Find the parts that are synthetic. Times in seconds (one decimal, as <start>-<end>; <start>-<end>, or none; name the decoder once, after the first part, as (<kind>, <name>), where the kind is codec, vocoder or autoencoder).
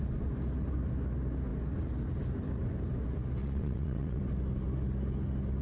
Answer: 3.4-4.2 (vocoder, WaveNeXt)